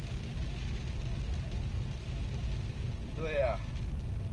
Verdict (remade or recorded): recorded